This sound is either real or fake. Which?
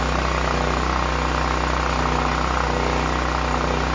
real